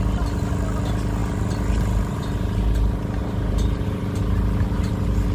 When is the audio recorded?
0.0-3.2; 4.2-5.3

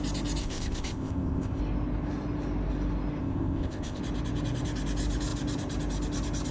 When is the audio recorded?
0.0-0.4; 1.6-3.2; 4.0-6.5